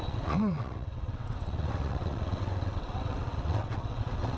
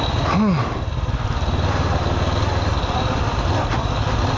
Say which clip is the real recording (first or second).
second